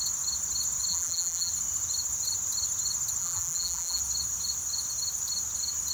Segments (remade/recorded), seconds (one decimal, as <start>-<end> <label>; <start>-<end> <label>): 0.0-0.9 recorded; 0.9-1.5 remade; 1.5-3.2 recorded; 3.2-4.0 remade; 4.0-5.9 recorded